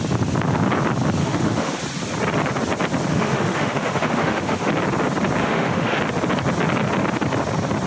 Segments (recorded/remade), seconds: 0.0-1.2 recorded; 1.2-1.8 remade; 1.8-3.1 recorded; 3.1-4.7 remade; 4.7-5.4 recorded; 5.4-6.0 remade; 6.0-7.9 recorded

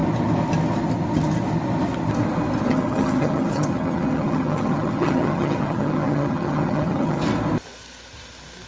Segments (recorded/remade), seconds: 0.0-2.7 recorded; 2.7-7.2 remade; 7.2-8.7 recorded

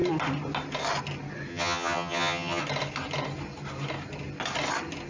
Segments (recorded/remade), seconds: 0.0-1.5 recorded; 1.5-2.6 remade; 2.6-5.1 recorded

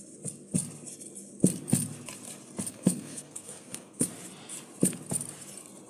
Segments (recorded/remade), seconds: 0.0-2.7 recorded; 2.7-4.1 remade; 4.1-5.9 recorded

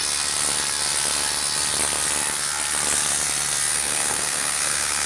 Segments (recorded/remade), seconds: 0.0-3.7 recorded; 3.7-5.1 remade

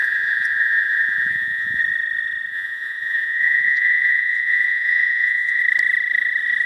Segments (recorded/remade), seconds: 0.0-1.8 remade; 1.8-2.5 recorded; 2.5-5.6 remade; 5.6-6.7 recorded

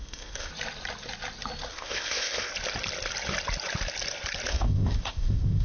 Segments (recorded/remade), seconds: 0.0-0.5 remade; 0.5-1.7 recorded; 1.7-2.5 remade; 2.5-4.5 recorded; 4.5-5.6 remade

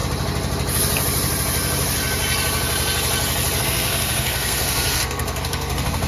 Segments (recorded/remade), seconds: 0.0-3.6 recorded; 3.6-6.1 remade